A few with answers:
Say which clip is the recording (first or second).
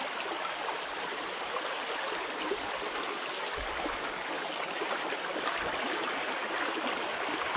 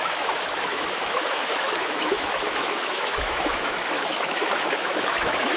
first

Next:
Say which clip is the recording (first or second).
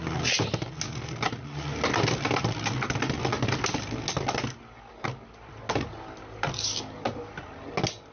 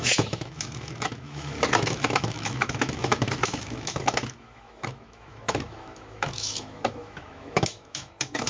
first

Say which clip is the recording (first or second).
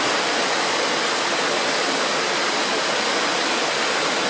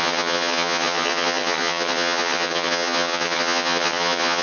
first